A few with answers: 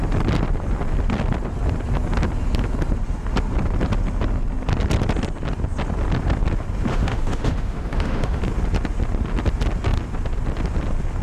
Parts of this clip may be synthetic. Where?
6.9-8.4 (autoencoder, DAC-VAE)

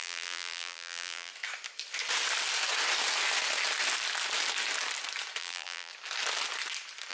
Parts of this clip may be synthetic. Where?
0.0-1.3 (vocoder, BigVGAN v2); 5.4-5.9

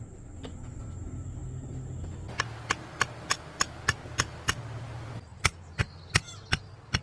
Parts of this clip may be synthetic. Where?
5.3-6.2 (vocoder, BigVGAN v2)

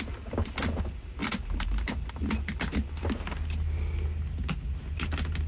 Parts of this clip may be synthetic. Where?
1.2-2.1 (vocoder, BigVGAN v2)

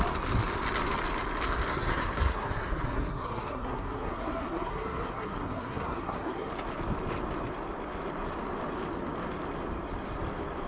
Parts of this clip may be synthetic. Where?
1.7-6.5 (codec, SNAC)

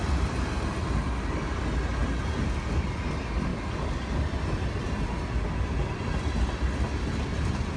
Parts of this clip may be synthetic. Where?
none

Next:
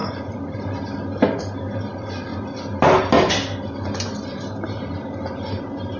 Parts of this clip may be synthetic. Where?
0.0-2.3 (vocoder, BigVGAN v2); 4.1-6.0